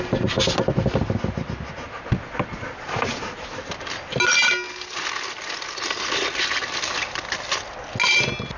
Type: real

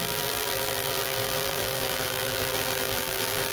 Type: fake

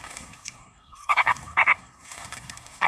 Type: fake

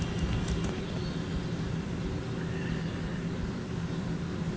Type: real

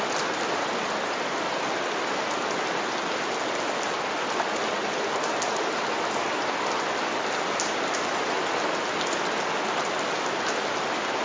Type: real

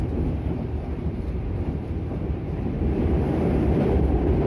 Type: fake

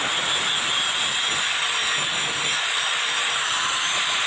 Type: real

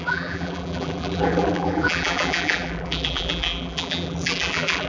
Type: fake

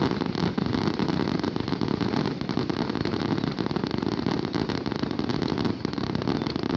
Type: real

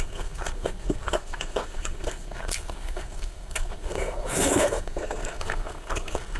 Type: fake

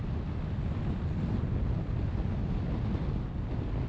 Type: real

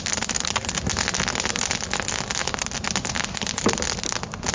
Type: real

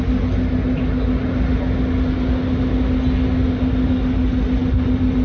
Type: real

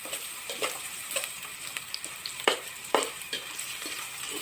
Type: fake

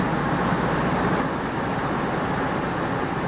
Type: real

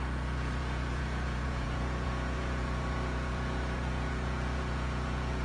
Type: fake